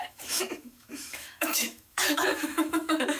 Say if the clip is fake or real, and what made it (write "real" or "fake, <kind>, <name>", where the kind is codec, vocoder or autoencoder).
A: fake, autoencoder, DAC-VAE